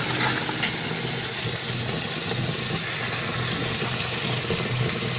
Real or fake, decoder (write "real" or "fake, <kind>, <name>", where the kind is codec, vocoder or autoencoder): real